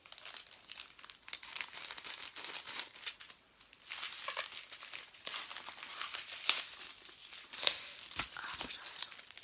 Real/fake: real